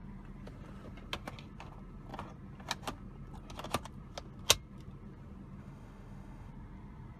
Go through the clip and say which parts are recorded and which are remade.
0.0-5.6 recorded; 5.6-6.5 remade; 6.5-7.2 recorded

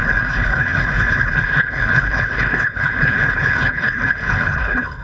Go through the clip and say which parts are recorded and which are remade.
0.0-5.0 remade

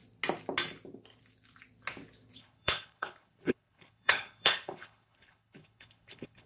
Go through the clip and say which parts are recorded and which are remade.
0.0-2.4 recorded; 2.4-6.5 remade

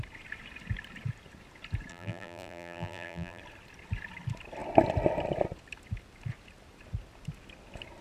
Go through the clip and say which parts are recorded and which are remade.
0.0-1.9 recorded; 1.9-3.4 remade; 3.4-8.0 recorded

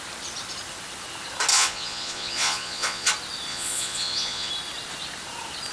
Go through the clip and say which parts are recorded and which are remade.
0.0-1.5 recorded; 1.5-3.1 remade; 3.1-3.5 recorded; 3.5-4.5 remade; 4.5-5.7 recorded